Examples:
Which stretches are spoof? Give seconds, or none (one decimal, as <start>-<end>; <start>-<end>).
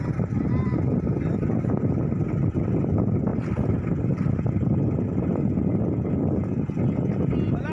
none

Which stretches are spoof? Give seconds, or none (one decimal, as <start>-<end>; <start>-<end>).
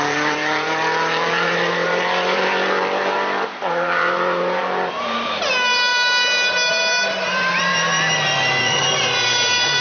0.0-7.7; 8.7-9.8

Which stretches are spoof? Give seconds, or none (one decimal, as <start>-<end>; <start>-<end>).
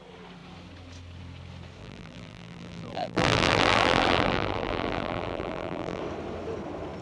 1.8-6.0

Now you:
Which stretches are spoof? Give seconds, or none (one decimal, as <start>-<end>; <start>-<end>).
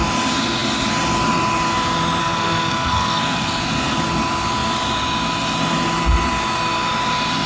2.2-3.6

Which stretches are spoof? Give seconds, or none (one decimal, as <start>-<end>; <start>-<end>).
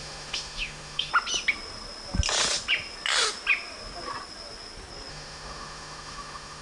0.0-1.1; 5.1-6.6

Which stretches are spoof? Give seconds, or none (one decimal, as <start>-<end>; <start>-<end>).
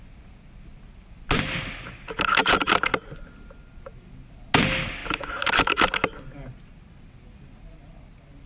5.0-5.5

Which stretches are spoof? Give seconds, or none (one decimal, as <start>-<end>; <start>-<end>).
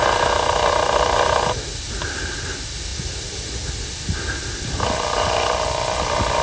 none